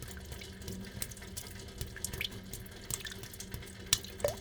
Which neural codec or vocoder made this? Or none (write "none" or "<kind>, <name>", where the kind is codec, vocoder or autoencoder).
none